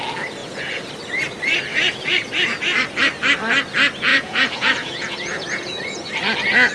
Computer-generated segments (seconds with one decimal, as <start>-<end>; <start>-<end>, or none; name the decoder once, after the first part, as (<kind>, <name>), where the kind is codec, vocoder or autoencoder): 0.4-0.9 (vocoder, Vocos); 1.7-2.3; 4.1-6.1